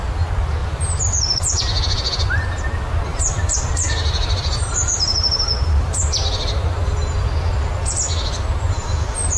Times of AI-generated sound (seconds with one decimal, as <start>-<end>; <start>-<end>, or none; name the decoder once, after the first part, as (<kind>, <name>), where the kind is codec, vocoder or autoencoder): 0.6-1.2 (vocoder, BigVGAN v2); 3.1-6.9